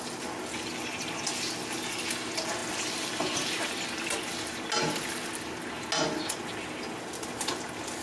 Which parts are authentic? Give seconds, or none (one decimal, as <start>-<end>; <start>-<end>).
0.0-8.0